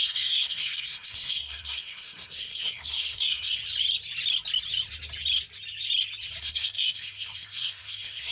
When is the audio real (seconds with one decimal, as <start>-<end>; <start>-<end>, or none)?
3.6-6.4